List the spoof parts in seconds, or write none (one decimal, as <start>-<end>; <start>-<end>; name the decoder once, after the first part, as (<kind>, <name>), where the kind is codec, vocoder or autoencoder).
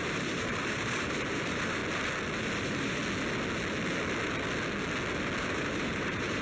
0.0-1.8 (vocoder, BigVGAN v2); 2.6-3.0; 5.4-6.4